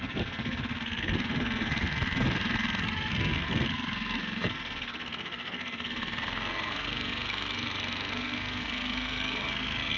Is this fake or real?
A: fake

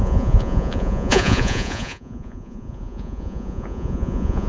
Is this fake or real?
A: fake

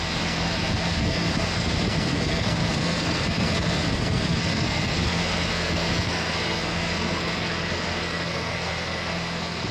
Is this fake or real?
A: fake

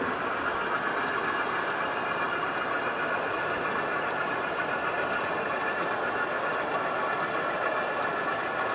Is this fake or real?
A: real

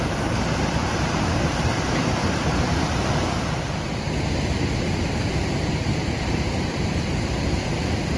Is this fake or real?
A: fake